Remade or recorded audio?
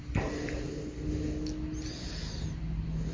recorded